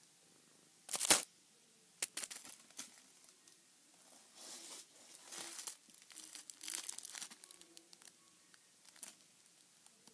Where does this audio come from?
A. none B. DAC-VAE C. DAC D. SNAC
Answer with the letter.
A